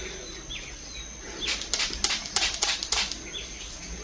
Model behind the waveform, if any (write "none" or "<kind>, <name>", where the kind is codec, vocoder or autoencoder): none